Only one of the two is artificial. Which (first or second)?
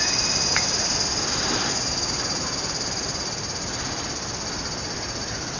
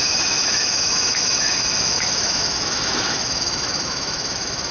second